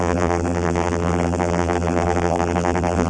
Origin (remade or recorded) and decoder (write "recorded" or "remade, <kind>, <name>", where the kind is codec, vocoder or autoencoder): remade, vocoder, BigVGAN v2